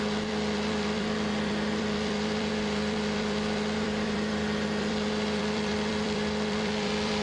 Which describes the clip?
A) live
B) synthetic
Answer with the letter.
B